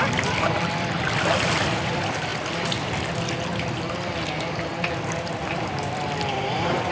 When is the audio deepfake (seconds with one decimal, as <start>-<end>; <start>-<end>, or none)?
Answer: 0.0-2.3; 3.7-4.7; 5.4-6.9